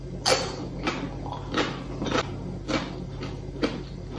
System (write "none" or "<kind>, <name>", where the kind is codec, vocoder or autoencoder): none